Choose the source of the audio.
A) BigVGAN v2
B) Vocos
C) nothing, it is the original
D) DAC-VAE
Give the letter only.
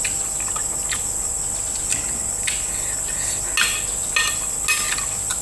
C